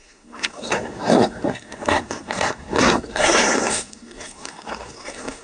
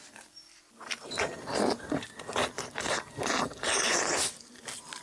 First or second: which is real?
second